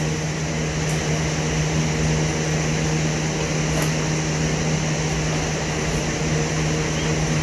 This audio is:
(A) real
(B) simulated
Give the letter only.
A